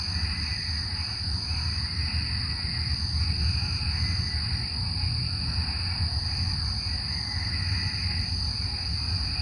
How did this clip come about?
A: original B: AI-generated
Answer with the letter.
A